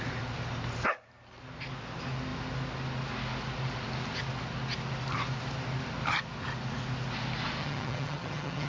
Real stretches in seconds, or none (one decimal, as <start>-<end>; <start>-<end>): 0.0-7.6